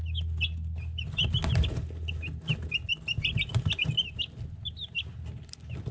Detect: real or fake real